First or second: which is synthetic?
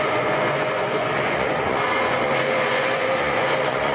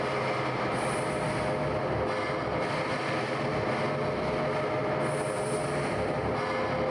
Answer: first